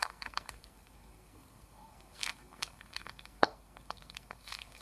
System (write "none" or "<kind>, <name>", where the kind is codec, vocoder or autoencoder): codec, SNAC